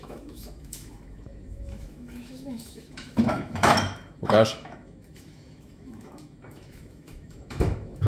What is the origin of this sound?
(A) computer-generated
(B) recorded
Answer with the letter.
A